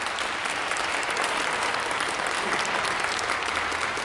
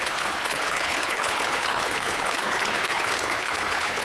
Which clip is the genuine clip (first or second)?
first